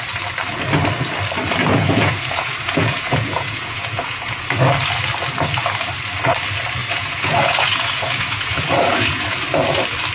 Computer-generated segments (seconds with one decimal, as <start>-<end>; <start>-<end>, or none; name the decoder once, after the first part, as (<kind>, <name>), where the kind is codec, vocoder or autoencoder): 1.7-4.3 (vocoder, Vocos); 6.8-9.4